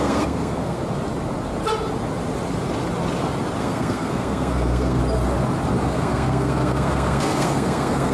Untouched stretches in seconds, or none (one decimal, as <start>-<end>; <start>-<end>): 0.8-3.6; 5.0-5.8